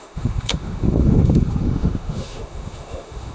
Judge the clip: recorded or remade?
remade